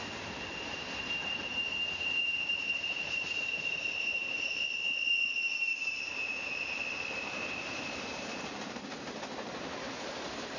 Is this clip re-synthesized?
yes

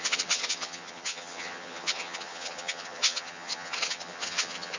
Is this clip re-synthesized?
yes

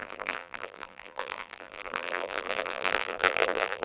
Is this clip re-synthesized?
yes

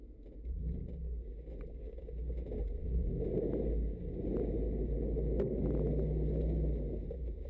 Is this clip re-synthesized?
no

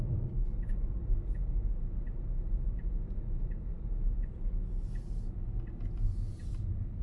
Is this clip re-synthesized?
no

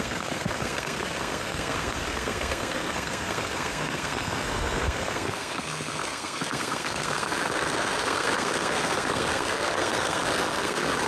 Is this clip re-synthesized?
yes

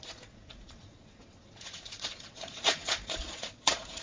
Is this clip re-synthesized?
yes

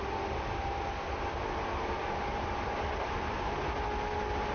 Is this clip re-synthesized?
no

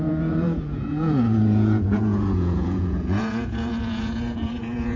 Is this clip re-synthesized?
yes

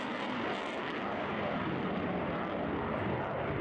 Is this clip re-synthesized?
no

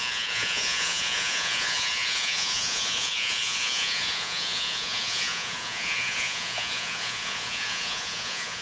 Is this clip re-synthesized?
yes